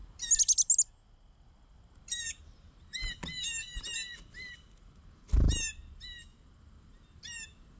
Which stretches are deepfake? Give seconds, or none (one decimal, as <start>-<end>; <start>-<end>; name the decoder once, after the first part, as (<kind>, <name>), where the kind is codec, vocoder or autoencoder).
none